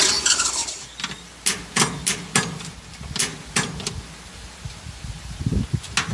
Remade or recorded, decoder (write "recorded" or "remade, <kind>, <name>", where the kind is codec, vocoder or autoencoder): recorded